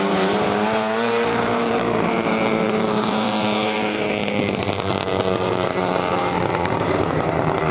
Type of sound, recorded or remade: remade